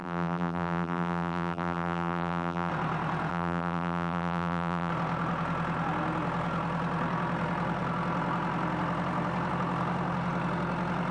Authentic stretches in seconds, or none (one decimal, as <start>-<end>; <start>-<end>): 2.7-3.3; 4.9-11.1